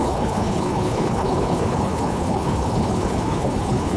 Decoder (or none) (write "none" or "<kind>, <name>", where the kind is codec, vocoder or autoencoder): codec, HILCodec